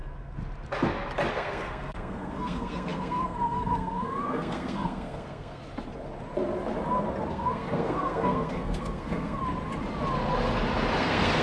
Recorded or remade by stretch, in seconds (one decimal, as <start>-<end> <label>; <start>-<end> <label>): 0.0-1.3 recorded; 1.3-5.6 remade; 5.6-7.3 recorded; 7.3-9.4 remade; 9.4-11.0 recorded; 11.0-11.4 remade